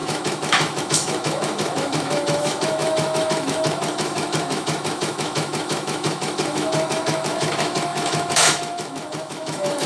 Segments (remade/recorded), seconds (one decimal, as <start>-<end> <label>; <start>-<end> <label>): 0.0-9.9 remade